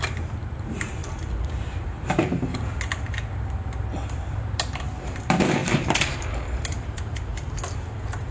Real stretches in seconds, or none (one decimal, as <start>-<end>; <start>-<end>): 1.0-1.5; 2.5-4.3; 7.3-8.3